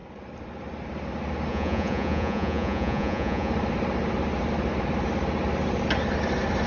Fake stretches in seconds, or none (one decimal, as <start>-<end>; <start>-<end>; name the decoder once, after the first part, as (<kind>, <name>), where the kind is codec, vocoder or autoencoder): 1.5-3.5 (vocoder, Vocos)